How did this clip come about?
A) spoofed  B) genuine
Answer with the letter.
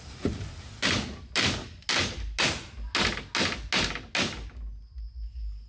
B